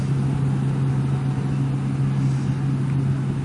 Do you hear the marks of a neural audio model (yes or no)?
no